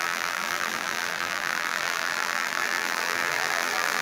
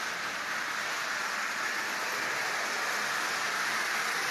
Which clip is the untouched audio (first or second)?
second